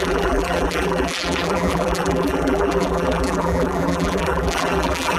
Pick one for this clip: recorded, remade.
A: remade